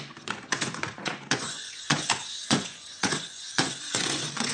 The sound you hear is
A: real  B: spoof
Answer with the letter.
B